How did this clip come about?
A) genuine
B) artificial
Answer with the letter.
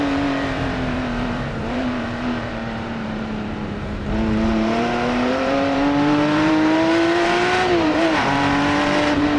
B